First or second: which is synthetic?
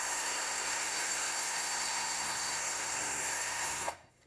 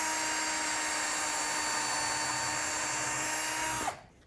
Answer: first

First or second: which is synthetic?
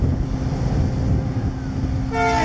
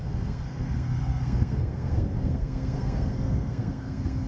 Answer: second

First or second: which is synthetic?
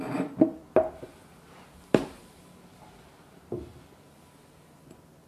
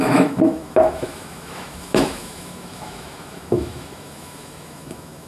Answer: second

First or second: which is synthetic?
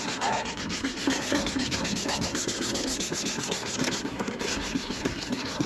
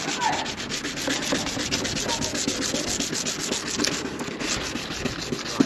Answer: first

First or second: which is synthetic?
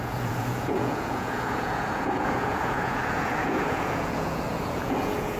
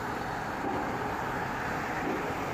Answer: first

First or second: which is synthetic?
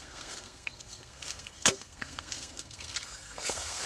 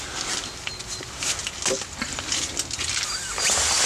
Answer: first